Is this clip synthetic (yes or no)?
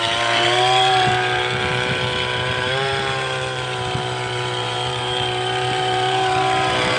yes